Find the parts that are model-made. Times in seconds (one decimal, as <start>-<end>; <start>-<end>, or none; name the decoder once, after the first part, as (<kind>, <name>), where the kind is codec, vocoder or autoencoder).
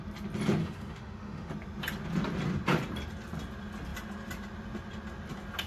0.6-1.5 (autoencoder, DAC-VAE)